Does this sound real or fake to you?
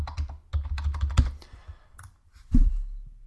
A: real